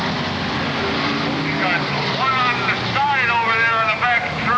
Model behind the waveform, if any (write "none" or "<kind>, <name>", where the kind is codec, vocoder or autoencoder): none